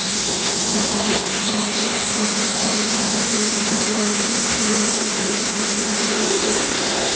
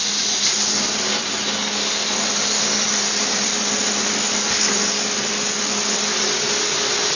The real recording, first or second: second